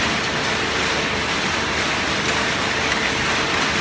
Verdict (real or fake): real